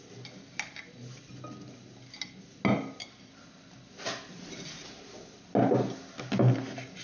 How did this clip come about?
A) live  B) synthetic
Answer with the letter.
A